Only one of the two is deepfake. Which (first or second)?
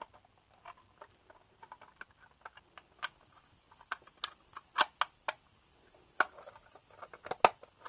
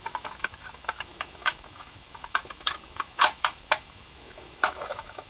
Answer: second